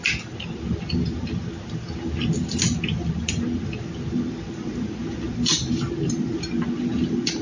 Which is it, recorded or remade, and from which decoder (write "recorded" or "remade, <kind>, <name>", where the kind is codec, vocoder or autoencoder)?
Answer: recorded